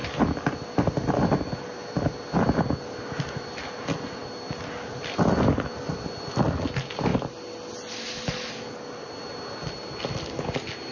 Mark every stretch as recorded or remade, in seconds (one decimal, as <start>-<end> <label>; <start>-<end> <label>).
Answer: 0.0-10.9 recorded